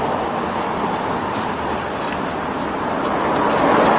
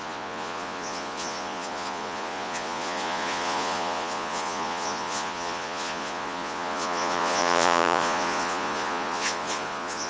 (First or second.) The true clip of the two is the first